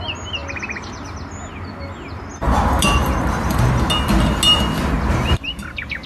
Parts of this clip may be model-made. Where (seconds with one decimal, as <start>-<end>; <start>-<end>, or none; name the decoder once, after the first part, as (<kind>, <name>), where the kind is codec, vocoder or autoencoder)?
none